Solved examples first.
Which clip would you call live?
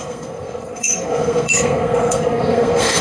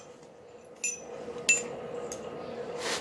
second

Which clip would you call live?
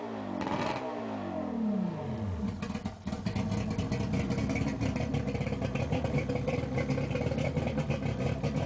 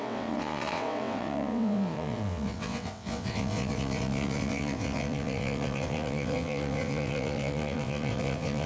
first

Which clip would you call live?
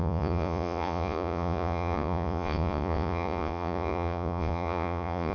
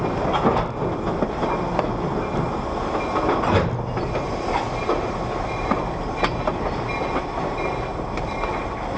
second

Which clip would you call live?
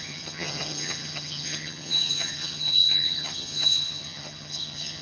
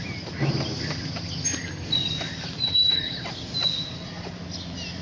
second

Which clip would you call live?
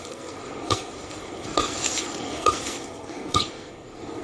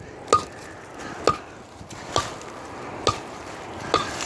second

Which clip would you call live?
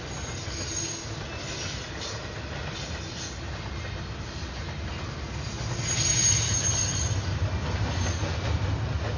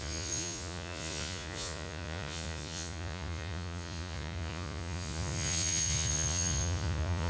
first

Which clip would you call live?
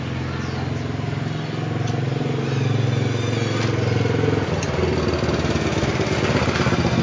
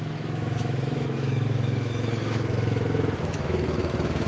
first